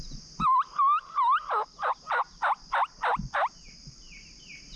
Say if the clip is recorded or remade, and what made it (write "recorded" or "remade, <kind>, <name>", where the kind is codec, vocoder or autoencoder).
recorded